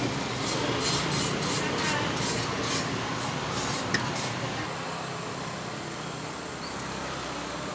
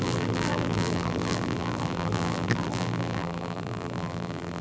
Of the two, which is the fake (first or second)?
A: second